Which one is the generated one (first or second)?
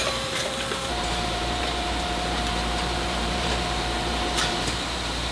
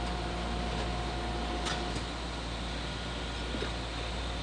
first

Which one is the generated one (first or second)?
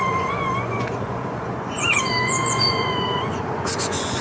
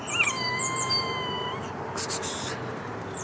first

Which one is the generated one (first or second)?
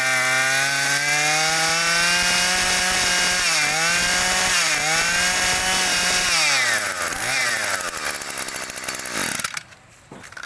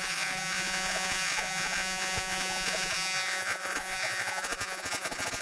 second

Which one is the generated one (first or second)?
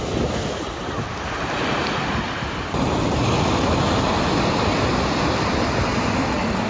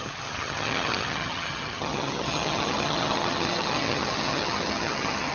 second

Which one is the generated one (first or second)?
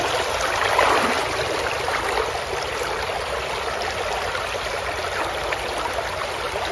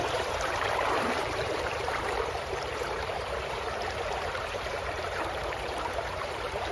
second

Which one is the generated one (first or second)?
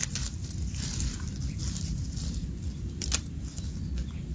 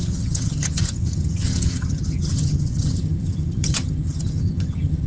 second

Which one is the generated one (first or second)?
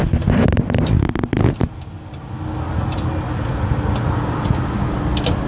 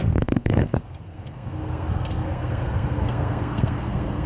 second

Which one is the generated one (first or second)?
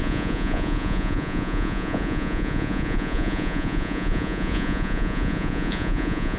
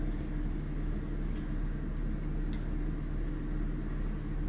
first